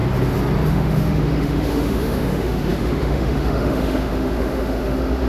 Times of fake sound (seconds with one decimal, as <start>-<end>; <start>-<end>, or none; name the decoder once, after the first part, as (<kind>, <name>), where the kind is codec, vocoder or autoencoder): 0.7-5.3 (autoencoder, DAC-VAE)